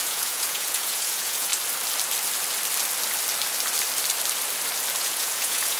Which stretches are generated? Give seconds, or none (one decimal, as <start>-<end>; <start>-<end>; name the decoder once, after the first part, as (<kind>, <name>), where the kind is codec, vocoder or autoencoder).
0.0-1.5 (vocoder, Vocos); 5.0-5.8